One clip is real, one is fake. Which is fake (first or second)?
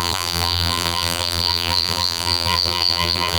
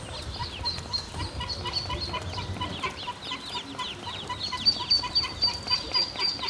first